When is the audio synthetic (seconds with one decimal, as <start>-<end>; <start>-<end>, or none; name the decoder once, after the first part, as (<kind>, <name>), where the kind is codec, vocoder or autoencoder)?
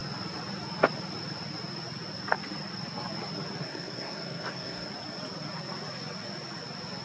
3.6-4.9 (codec, SNAC)